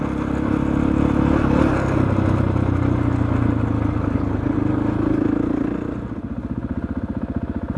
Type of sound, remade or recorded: recorded